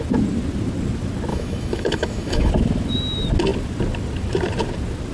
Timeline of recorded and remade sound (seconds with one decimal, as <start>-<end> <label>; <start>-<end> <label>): 0.0-1.3 recorded; 1.3-2.5 remade; 2.5-5.1 recorded